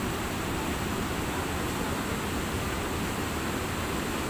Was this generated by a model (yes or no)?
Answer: no